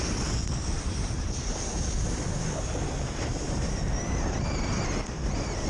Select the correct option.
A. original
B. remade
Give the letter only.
A